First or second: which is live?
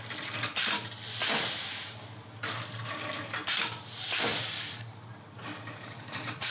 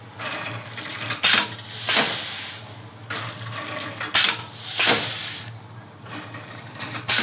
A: second